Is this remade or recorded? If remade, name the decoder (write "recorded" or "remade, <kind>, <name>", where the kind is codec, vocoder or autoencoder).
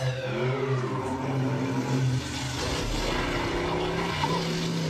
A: recorded